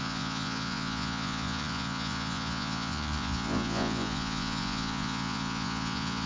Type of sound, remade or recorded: remade